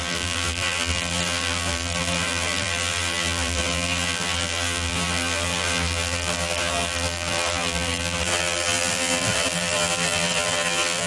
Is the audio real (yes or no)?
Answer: no